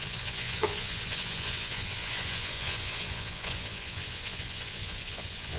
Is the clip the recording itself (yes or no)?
no